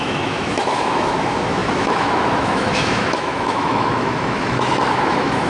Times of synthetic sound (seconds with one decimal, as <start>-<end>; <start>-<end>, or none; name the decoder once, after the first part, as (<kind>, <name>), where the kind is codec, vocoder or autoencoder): 0.0-5.5 (autoencoder, DAC-VAE)

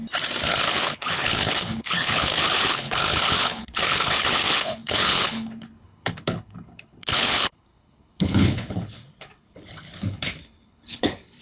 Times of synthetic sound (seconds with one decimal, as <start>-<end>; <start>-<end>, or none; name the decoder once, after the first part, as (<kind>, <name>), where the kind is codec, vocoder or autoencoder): 0.5-11.4 (codec, HILCodec)

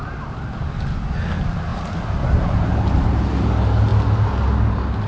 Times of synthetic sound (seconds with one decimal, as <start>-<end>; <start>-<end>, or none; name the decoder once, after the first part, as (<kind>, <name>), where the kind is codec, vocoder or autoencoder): 1.7-2.7 (vocoder, BigVGAN v2)

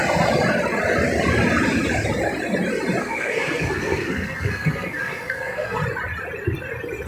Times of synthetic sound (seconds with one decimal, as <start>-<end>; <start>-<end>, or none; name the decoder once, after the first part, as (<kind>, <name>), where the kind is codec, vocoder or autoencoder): 3.0-5.8 (codec, SNAC)

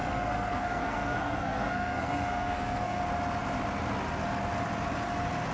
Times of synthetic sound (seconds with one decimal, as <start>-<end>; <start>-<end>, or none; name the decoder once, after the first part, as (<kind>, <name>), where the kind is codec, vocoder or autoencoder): 0.0-3.0 (codec, SNAC)